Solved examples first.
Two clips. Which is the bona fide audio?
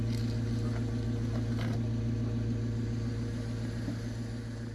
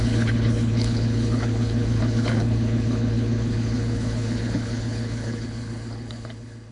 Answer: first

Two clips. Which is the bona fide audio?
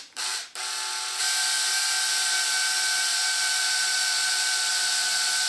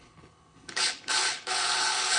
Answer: first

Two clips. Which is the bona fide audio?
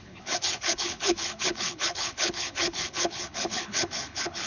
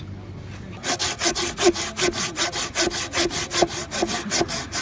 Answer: second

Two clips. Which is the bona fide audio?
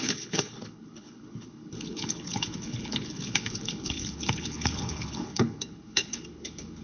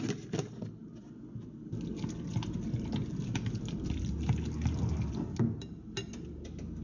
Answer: second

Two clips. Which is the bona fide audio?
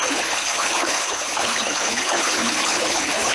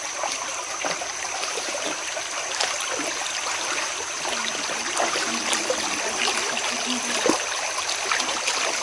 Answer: second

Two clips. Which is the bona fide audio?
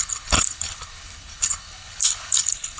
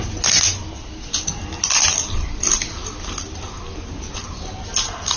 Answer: second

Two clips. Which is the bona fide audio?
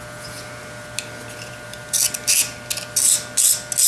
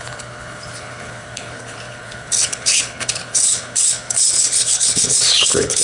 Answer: first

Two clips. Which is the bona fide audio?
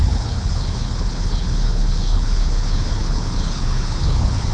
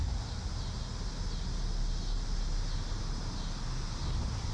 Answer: second